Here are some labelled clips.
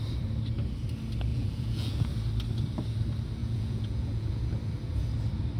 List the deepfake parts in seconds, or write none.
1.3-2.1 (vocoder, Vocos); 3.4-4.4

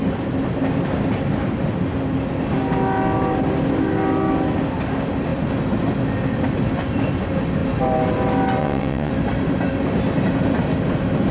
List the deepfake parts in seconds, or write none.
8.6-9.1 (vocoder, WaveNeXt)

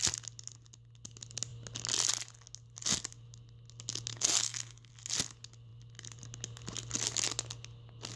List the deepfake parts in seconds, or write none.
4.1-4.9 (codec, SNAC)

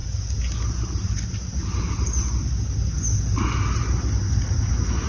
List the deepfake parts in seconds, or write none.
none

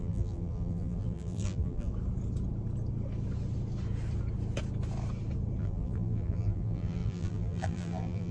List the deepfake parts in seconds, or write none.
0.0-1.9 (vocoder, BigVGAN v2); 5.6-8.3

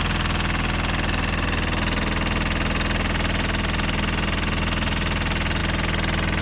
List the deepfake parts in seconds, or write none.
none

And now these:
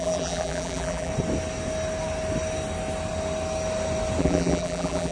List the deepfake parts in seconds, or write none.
0.0-1.1 (vocoder, BigVGAN v2); 4.2-5.1

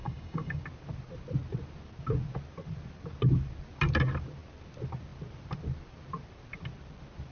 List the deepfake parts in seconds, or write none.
0.0-0.6 (codec, DAC)